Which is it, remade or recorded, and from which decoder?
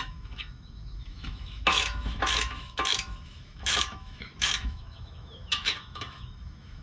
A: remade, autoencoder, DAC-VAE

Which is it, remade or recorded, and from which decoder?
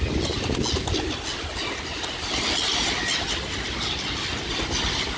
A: recorded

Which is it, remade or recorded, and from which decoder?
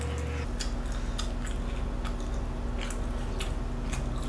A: recorded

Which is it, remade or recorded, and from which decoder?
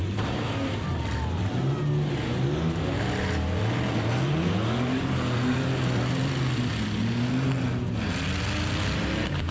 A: recorded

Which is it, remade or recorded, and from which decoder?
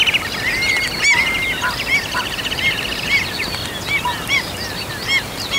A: recorded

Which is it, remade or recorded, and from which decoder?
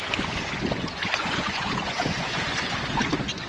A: remade, vocoder, Vocos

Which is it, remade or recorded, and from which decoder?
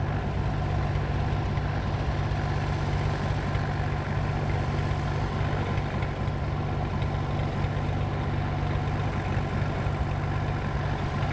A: recorded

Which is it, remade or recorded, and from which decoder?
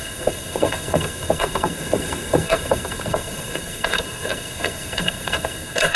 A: remade, codec, SNAC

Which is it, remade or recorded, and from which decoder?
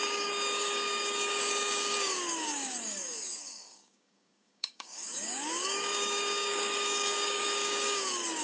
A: remade, codec, DAC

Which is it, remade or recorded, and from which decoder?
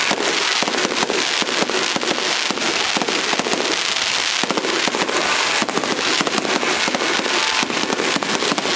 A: recorded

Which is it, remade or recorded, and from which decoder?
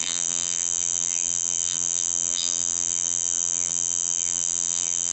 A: remade, vocoder, BigVGAN v2